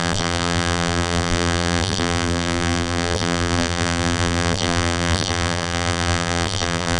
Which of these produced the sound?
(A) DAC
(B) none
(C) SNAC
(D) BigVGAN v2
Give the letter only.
D